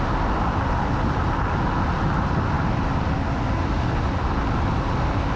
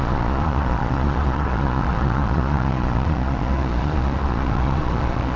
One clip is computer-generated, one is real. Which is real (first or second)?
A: first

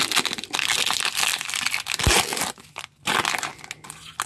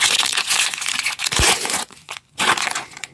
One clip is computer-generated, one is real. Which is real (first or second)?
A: first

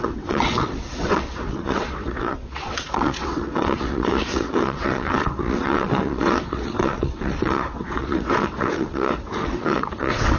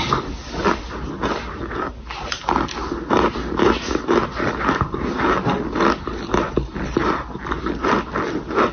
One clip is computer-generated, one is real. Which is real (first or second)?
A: second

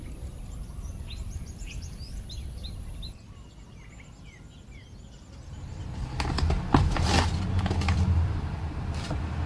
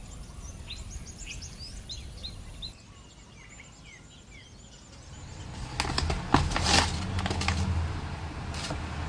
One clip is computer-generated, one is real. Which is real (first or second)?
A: second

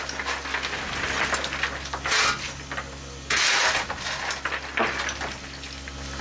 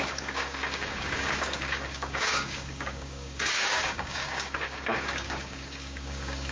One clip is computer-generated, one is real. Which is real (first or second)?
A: first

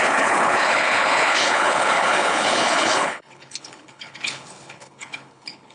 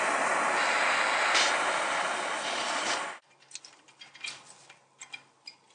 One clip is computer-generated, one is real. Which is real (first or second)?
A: second